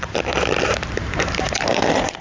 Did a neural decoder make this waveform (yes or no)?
yes